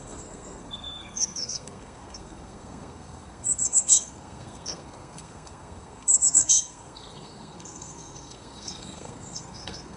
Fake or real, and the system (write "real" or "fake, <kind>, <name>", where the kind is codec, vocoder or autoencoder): fake, codec, SNAC